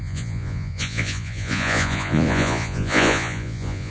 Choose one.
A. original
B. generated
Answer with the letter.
B